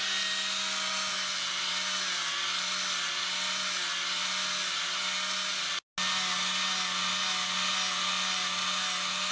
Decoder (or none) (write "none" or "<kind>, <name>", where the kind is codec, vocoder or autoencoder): none